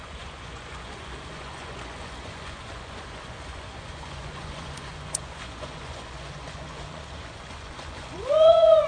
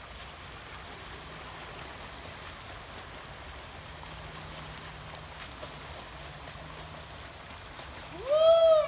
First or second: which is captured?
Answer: second